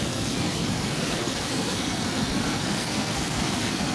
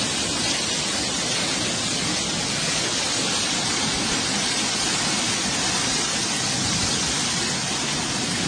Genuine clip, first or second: second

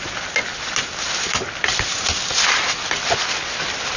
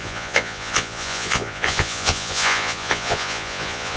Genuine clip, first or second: first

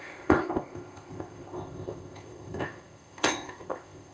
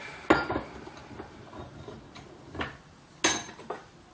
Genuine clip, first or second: second